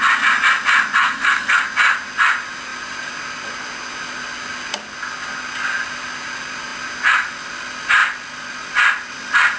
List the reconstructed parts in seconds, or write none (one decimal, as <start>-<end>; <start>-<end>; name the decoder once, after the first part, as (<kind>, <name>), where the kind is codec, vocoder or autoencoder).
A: 1.0-1.6 (codec, SNAC)